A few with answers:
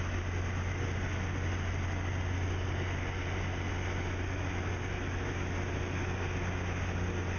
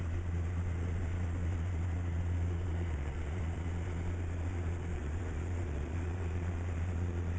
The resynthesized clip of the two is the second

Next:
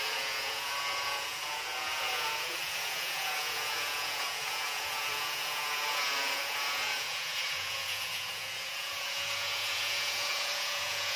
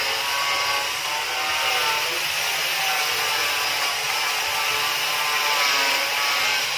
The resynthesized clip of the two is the first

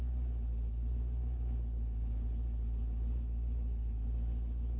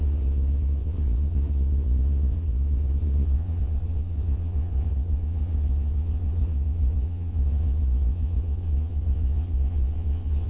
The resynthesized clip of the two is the second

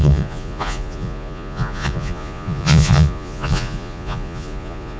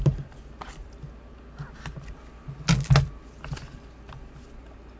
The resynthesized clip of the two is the first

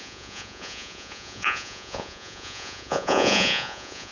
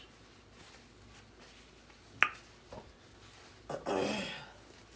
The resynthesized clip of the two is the first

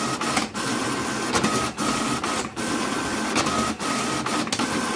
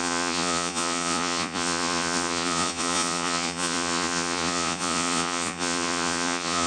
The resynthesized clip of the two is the second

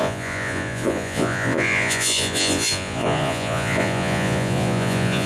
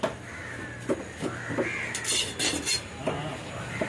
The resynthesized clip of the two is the first